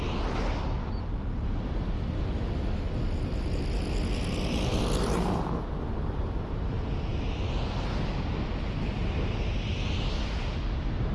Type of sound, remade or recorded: recorded